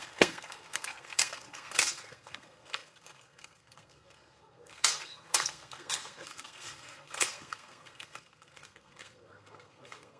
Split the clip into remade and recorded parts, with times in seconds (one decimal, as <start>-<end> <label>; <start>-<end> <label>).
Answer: 0.0-10.2 remade